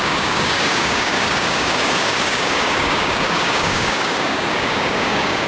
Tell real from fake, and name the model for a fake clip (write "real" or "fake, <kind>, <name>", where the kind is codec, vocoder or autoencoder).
fake, codec, DAC